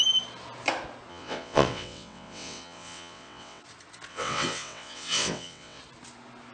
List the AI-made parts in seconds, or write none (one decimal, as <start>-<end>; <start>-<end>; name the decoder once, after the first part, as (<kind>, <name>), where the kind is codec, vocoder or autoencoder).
1.1-3.6 (vocoder, WaveNeXt); 4.1-5.8